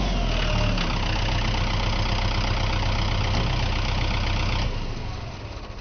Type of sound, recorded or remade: recorded